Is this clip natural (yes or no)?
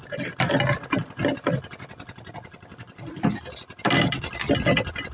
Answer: yes